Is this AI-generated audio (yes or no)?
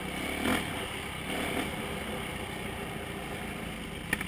no